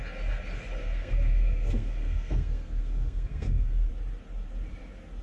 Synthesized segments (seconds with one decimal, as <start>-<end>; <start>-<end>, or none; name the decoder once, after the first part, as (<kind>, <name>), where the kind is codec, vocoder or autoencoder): 0.8-3.9 (codec, SNAC)